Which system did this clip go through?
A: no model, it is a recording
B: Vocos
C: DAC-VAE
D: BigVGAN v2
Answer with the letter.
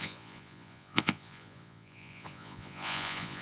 B